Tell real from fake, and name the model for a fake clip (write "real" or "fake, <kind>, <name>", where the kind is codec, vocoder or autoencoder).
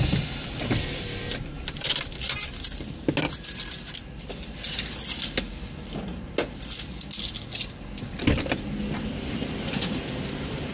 real